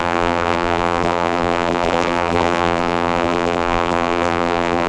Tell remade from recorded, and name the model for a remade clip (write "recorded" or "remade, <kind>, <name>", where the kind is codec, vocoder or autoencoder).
remade, vocoder, BigVGAN v2